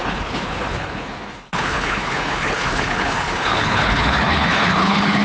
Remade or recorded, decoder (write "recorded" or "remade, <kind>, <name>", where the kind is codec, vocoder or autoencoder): remade, codec, HILCodec